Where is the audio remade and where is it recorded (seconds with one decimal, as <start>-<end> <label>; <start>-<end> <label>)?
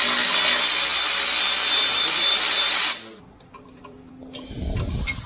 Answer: 0.0-0.9 recorded; 0.9-4.1 remade; 4.1-5.3 recorded